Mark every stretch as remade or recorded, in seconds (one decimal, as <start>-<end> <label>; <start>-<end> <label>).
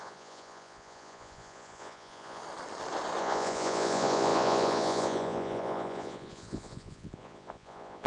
0.0-2.4 remade; 2.4-3.2 recorded; 3.2-8.1 remade